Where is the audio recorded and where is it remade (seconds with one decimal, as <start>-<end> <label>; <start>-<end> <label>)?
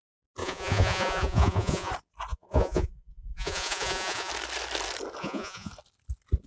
0.0-0.4 recorded; 0.4-1.9 remade; 1.9-2.3 recorded; 2.3-4.3 remade; 4.3-5.2 recorded; 5.2-5.7 remade; 5.7-6.5 recorded